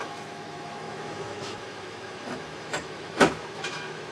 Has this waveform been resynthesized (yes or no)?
yes